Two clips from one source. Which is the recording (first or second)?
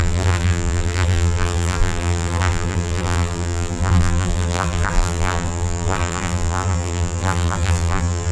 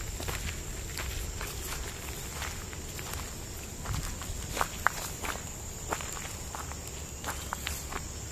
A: second